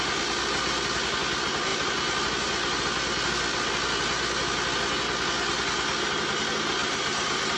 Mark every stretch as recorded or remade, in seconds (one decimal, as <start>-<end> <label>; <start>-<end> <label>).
0.0-6.8 recorded; 6.8-7.6 remade

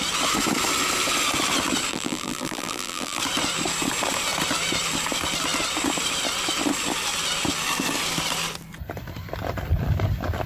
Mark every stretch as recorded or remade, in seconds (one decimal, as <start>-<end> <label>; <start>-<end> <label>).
0.0-1.9 recorded; 1.9-3.2 remade; 3.2-10.5 recorded

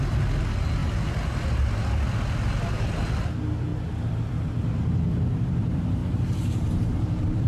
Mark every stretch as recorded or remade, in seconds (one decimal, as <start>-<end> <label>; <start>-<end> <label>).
0.0-6.0 remade; 6.0-7.0 recorded; 7.0-7.5 remade

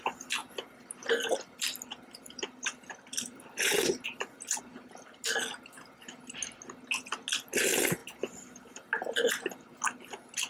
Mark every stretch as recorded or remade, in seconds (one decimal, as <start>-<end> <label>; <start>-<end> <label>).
0.0-0.4 recorded; 0.4-4.6 remade; 4.6-8.0 recorded; 8.0-9.3 remade; 9.3-10.5 recorded

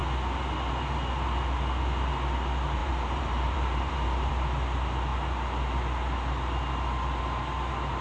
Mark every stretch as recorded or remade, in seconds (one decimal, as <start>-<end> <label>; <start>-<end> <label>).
0.0-2.8 recorded; 2.8-4.3 remade; 4.3-8.0 recorded

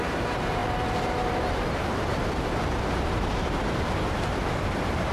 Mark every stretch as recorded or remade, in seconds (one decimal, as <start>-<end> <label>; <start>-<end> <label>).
0.0-5.1 remade